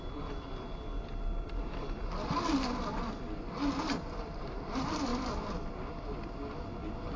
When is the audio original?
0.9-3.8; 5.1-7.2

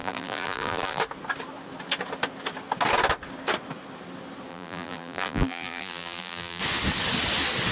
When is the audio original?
1.0-4.5; 6.6-7.7

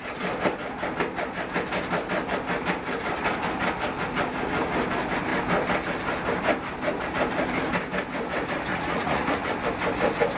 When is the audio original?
0.0-8.7; 9.5-10.4

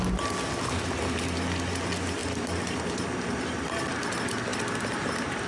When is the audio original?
0.0-5.5

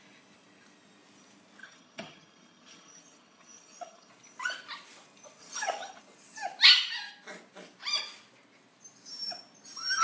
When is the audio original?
0.0-1.6; 4.1-5.4; 6.0-10.0

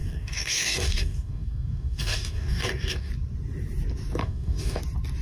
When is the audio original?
3.1-4.2; 4.8-5.2